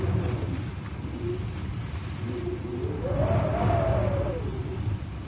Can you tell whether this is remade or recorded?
recorded